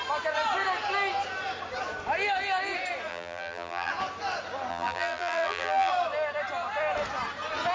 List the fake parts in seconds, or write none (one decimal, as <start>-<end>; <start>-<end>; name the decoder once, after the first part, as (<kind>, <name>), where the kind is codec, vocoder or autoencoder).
3.1-3.9 (vocoder, BigVGAN v2); 4.7-5.9